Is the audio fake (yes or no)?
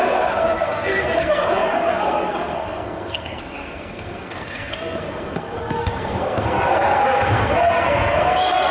yes